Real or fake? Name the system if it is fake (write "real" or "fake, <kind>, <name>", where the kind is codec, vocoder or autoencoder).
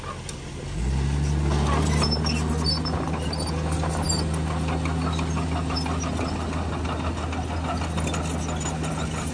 real